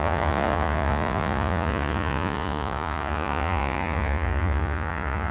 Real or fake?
fake